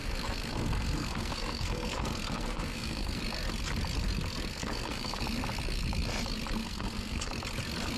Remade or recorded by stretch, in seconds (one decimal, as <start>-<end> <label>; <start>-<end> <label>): 0.0-3.2 remade; 3.2-4.5 recorded; 4.5-5.2 remade; 5.2-6.6 recorded; 6.6-7.3 remade; 7.3-8.0 recorded